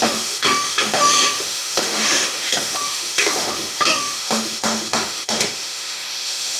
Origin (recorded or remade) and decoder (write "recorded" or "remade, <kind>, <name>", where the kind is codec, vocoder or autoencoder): remade, autoencoder, DAC-VAE